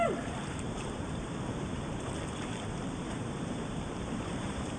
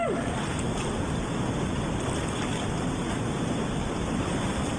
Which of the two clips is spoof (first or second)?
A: first